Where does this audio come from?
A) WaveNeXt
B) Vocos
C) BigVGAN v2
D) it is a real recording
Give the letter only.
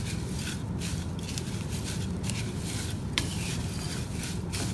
C